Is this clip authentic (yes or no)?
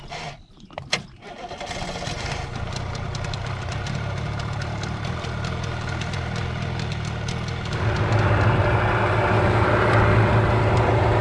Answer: yes